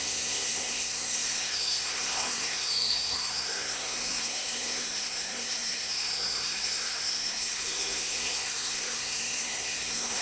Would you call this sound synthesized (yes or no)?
yes